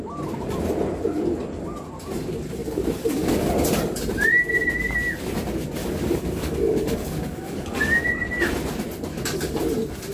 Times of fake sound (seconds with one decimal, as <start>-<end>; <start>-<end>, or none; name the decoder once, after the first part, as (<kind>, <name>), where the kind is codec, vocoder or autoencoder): 2.6-3.5 (codec, DAC); 5.8-8.1; 9.1-9.7